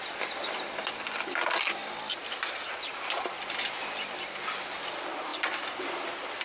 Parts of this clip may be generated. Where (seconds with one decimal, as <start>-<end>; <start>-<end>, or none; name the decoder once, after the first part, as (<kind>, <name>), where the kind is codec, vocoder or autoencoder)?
none